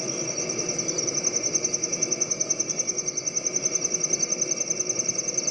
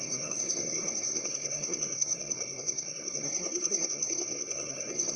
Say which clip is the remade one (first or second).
second